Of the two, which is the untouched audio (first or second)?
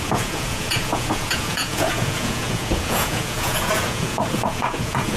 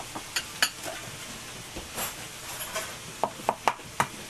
second